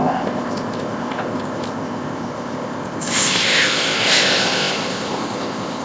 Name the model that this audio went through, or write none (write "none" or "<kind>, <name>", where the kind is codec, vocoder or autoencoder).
codec, ZipCodec